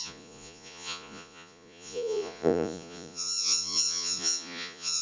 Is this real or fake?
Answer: fake